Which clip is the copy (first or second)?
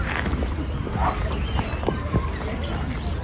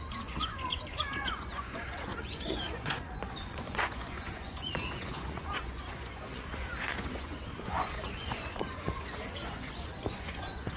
second